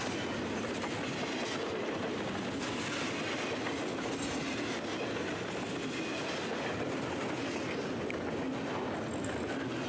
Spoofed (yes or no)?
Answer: no